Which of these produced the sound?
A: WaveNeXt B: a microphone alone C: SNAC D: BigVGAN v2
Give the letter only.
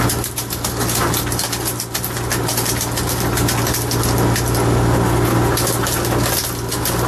B